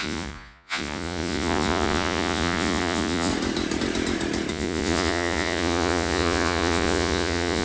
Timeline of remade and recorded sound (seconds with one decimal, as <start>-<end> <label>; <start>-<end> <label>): 0.0-3.3 remade; 3.3-4.5 recorded; 4.5-7.6 remade